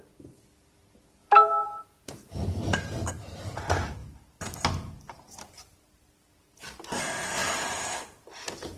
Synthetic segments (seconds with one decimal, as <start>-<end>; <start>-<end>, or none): 1.2-3.0; 7.4-8.0